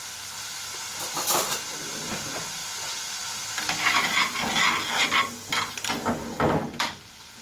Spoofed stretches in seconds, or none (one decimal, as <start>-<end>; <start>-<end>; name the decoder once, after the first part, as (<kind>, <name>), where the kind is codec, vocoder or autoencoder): none

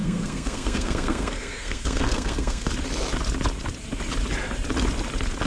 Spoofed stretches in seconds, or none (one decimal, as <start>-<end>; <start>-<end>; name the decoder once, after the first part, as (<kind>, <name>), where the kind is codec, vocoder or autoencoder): 0.0-2.7 (codec, SNAC)

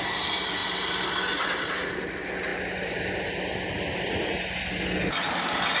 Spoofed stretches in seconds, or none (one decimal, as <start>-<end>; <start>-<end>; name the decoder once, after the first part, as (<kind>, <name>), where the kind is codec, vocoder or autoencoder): 0.6-2.1 (vocoder, BigVGAN v2)